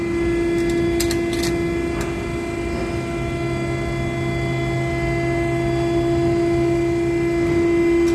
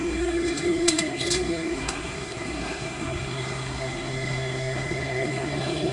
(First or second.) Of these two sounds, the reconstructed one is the second